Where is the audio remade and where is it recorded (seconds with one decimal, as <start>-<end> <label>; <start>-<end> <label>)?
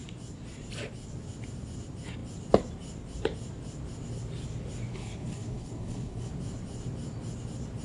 0.0-4.9 recorded; 4.9-6.3 remade; 6.3-7.8 recorded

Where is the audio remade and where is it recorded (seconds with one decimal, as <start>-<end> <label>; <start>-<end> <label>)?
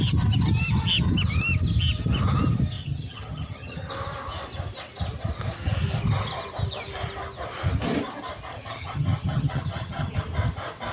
0.0-2.8 recorded; 2.8-3.9 remade; 3.9-8.5 recorded; 8.5-10.2 remade; 10.2-10.9 recorded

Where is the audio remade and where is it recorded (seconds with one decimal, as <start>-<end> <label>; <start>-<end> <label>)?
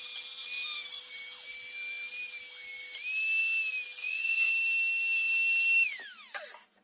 0.0-4.0 recorded; 4.0-4.5 remade; 4.5-6.8 recorded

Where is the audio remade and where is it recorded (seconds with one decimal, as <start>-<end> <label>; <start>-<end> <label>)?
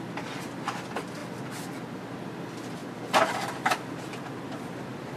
0.0-2.8 recorded; 2.8-5.2 remade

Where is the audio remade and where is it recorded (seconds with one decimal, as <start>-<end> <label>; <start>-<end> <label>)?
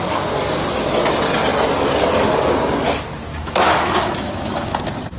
0.0-3.3 recorded; 3.3-4.8 remade; 4.8-5.2 recorded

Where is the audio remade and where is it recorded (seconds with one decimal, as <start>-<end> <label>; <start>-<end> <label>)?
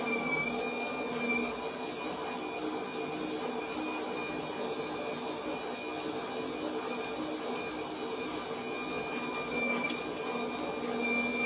0.0-11.5 recorded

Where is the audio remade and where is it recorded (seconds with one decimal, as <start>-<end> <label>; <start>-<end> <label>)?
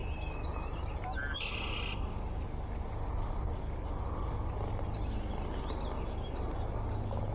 0.0-7.3 recorded